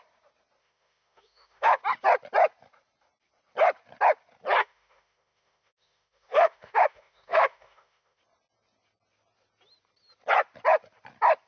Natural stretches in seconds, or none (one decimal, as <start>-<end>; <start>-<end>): 0.0-0.6; 1.8-4.6; 8.2-11.5